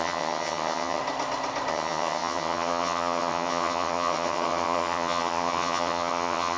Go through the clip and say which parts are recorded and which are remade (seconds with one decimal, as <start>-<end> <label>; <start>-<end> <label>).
0.0-1.0 remade; 1.0-1.7 recorded; 1.7-6.6 remade